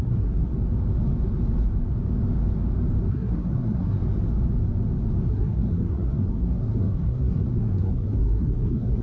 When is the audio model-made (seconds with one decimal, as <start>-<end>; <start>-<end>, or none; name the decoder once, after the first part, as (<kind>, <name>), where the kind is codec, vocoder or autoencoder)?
0.0-0.5 (codec, SNAC); 3.1-4.0; 5.3-9.0